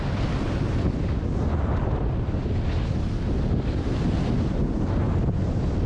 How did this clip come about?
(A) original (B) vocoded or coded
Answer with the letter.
A